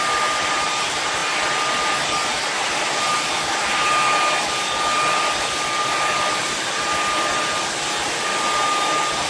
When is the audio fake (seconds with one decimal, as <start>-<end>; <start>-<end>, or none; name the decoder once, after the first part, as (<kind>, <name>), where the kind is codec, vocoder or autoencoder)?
none

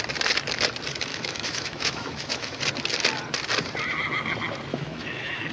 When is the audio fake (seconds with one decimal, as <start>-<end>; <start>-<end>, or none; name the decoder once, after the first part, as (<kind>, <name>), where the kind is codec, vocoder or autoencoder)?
1.1-2.6 (autoencoder, DAC-VAE); 4.7-5.5

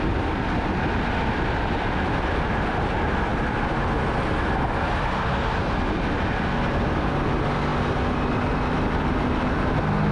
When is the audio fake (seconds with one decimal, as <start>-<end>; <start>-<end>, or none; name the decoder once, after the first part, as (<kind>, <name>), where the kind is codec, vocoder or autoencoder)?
none

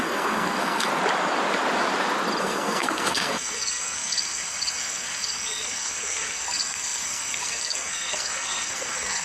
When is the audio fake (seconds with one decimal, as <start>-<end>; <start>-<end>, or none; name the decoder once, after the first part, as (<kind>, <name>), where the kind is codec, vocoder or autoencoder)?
0.0-0.9 (codec, SNAC); 2.4-9.2